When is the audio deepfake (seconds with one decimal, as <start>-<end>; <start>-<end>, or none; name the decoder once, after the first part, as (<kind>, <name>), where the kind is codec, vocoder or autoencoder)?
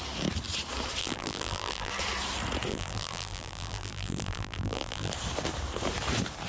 1.0-1.9 (vocoder, BigVGAN v2); 2.7-5.1